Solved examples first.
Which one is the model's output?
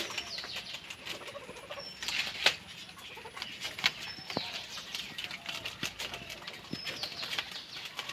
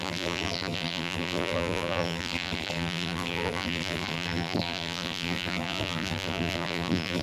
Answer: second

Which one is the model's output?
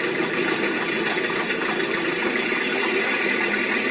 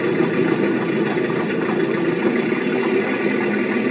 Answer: first